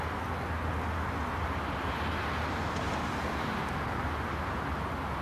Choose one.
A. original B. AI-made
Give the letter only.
A